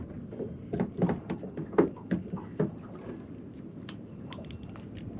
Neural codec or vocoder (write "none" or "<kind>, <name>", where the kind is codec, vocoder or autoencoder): none